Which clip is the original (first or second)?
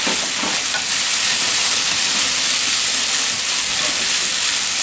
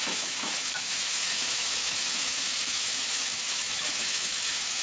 first